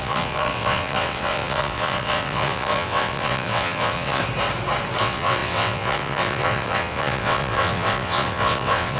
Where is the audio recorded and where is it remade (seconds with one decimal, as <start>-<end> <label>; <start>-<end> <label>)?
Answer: 0.0-4.2 remade; 4.2-5.0 recorded; 5.0-9.0 remade